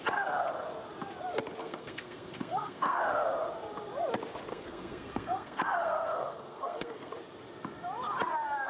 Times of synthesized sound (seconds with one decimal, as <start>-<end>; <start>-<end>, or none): 1.6-3.0; 4.5-7.1